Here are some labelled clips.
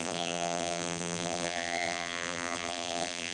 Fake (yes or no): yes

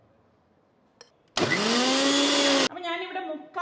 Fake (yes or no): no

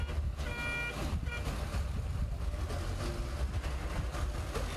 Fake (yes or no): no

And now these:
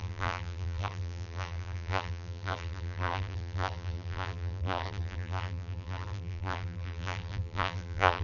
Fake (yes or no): yes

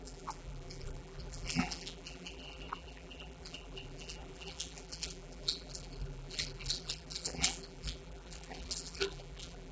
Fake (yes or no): yes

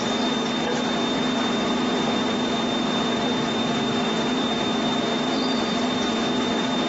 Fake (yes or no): yes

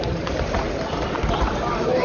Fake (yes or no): yes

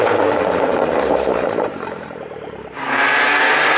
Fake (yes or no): yes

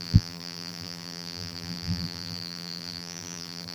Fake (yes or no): yes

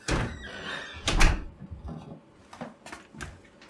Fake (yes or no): no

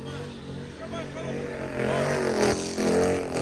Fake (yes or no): no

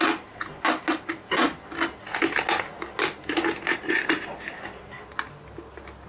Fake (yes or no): no